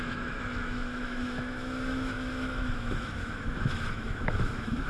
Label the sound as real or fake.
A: fake